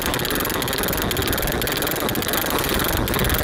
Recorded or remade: recorded